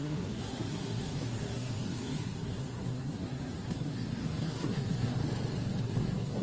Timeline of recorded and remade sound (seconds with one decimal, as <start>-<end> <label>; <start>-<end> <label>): 0.0-5.2 remade; 5.2-5.8 recorded; 5.8-6.4 remade